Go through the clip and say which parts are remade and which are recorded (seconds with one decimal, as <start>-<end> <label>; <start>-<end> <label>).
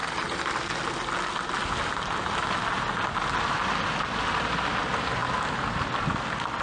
0.0-4.0 recorded; 4.0-5.2 remade; 5.2-5.8 recorded; 5.8-6.6 remade